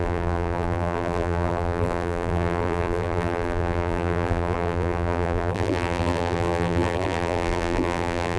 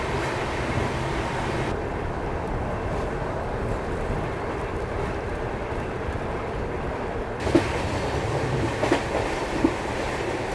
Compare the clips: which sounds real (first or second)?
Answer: second